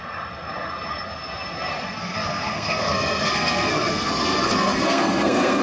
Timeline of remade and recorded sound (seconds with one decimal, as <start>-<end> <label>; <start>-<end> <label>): 0.0-2.0 recorded; 2.0-5.6 remade